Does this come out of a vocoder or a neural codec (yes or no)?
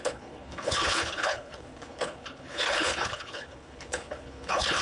yes